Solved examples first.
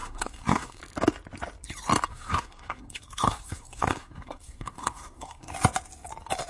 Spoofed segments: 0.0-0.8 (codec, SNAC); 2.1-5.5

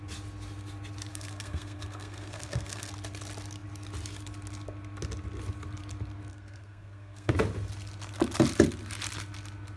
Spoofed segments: 1.1-2.9 (codec, SNAC); 6.3-7.3

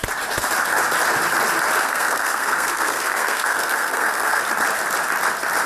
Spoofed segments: 1.8-4.4 (codec, SNAC)

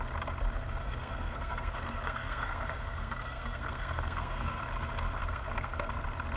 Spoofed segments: 0.8-4.6 (codec, SNAC); 5.2-5.9

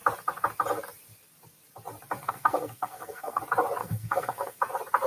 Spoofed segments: 2.2-3.4 (codec, SNAC); 3.8-4.6

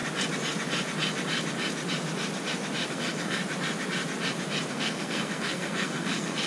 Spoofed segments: 2.9-3.4 (codec, SNAC); 4.7-6.5

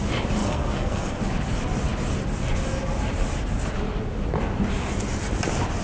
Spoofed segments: 0.4-1.2 (codec, SNAC)

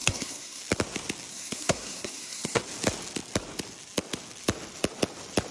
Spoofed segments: 0.0-0.6 (codec, SNAC); 1.3-2.6